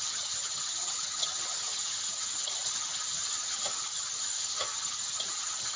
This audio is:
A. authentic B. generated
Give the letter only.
B